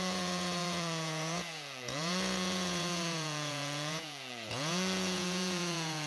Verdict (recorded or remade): remade